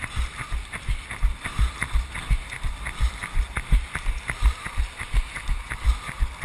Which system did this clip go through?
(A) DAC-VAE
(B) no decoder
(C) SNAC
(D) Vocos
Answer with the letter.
B